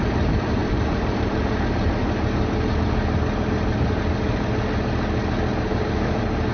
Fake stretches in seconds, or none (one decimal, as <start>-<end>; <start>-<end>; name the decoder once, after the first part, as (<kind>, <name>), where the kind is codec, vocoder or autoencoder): 0.0-2.0 (vocoder, BigVGAN v2); 5.6-6.5